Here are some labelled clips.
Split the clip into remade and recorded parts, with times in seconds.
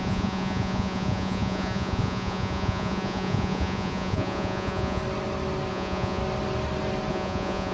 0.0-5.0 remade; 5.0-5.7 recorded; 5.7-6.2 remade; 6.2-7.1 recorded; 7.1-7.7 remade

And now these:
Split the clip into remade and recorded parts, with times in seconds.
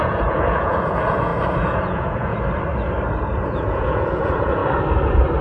0.0-2.3 remade; 2.3-3.2 recorded; 3.2-4.6 remade; 4.6-5.4 recorded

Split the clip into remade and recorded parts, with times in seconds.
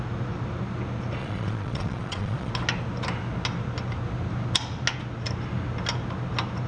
0.0-1.2 recorded; 1.2-2.5 remade; 2.5-6.7 recorded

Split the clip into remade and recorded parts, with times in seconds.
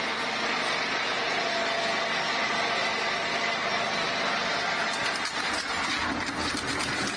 0.0-7.2 recorded